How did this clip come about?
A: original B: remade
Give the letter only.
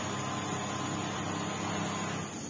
A